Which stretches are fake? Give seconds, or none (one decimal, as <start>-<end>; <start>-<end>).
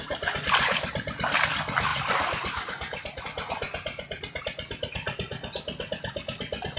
1.9-3.2